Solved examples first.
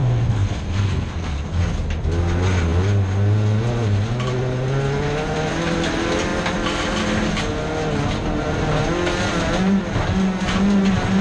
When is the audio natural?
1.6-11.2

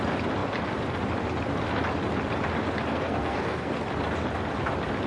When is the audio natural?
0.0-2.9; 3.8-5.1

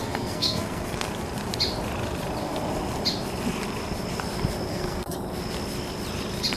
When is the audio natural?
1.1-4.7; 5.2-6.6

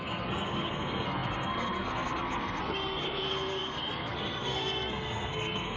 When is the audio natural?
none